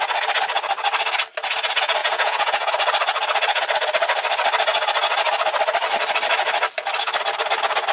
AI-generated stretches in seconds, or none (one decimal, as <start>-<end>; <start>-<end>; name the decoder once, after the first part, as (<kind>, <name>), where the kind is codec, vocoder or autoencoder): 2.0-2.7 (vocoder, Vocos)